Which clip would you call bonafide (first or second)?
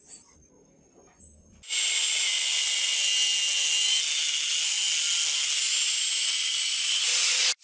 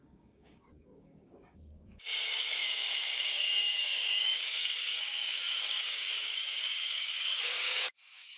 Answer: first